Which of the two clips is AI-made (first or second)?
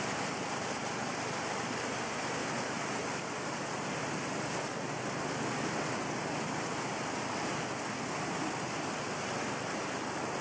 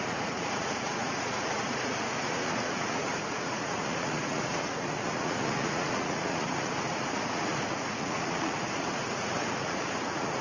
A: second